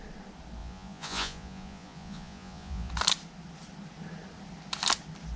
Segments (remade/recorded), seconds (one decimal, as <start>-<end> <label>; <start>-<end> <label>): 0.0-0.6 recorded; 0.6-2.9 remade; 2.9-5.4 recorded